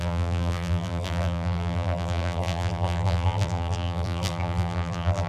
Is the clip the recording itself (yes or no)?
no